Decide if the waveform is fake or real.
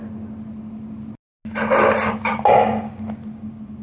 real